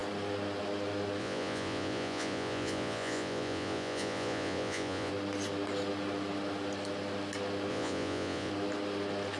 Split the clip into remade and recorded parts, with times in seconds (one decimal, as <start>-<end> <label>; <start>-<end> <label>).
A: 0.0-1.2 recorded; 1.2-5.1 remade; 5.1-7.7 recorded; 7.7-8.5 remade; 8.5-9.4 recorded